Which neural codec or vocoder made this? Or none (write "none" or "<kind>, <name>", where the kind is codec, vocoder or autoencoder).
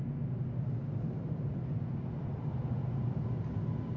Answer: none